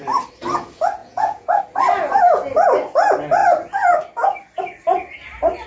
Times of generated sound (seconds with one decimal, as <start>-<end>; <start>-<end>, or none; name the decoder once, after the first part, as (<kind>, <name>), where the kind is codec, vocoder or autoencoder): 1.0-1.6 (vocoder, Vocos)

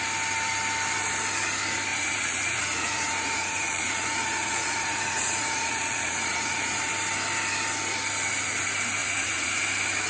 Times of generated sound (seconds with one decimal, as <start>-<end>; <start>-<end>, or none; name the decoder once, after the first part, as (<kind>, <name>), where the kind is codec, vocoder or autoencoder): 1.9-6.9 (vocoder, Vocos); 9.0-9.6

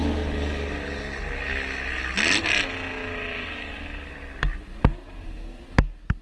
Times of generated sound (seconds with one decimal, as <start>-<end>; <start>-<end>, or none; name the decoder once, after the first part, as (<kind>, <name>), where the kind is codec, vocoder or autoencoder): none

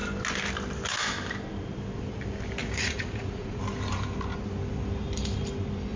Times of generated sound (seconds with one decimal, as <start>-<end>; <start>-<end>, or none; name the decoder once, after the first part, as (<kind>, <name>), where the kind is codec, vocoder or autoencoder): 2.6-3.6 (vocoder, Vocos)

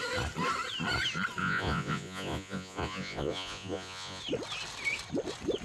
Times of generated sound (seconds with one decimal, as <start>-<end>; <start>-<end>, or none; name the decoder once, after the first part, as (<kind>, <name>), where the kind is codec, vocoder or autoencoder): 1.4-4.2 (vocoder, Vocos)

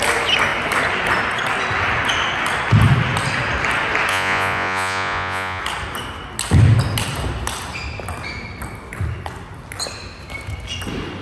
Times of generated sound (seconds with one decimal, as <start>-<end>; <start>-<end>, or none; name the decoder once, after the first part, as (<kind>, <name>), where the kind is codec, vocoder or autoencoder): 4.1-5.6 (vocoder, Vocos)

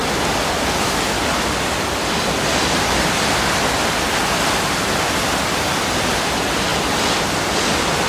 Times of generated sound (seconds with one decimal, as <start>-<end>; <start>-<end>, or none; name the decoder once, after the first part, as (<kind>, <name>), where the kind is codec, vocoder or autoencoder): none

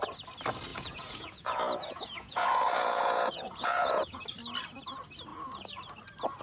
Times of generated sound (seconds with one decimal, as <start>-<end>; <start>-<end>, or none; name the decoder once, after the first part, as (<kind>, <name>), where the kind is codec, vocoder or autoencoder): 0.7-4.2 (vocoder, Vocos)